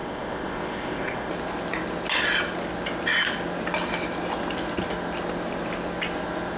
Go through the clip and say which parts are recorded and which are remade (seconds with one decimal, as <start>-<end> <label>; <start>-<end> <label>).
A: 0.0-1.3 remade; 1.3-6.6 recorded